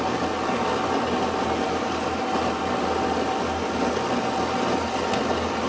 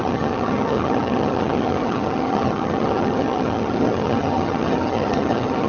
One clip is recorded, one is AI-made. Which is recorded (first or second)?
first